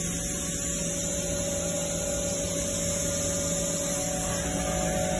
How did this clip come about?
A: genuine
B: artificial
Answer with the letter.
A